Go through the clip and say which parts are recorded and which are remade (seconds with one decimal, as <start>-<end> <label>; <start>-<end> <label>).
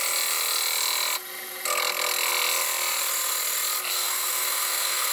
0.0-3.9 recorded; 3.9-5.1 remade